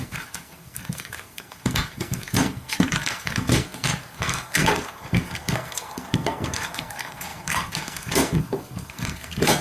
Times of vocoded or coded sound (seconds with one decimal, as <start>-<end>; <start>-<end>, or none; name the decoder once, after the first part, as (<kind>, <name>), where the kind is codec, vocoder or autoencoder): 0.0-9.6 (codec, SNAC)